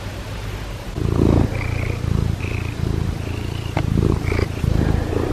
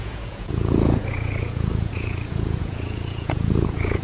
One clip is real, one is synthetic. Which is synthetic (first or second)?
second